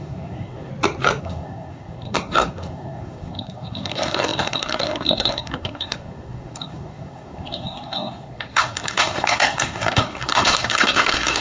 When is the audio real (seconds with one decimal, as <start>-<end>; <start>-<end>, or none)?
0.7-1.2